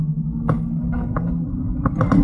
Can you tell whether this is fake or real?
real